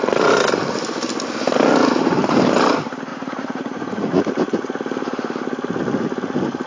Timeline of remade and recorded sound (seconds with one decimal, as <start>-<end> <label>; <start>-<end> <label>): 0.0-3.1 recorded; 3.1-4.2 remade; 4.2-6.7 recorded